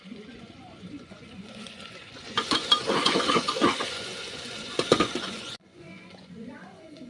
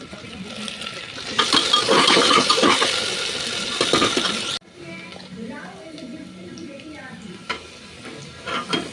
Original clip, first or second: second